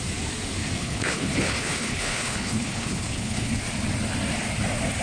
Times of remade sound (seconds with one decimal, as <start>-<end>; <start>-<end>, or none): 0.8-3.6